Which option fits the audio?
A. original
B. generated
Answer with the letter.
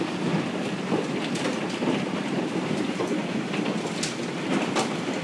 B